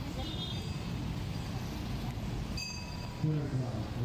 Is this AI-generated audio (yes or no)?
no